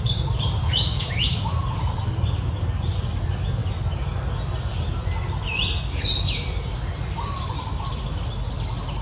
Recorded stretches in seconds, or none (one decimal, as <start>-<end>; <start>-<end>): 0.0-0.6; 1.5-9.0